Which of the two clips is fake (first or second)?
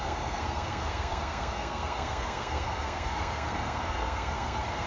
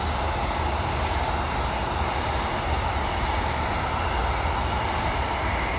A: first